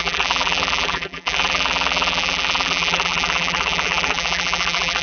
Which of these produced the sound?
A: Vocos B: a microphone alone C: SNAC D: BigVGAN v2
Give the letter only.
D